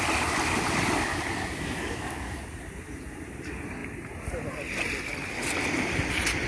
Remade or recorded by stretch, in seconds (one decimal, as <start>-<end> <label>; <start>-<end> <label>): 0.0-1.1 recorded; 1.1-2.4 remade; 2.4-6.5 recorded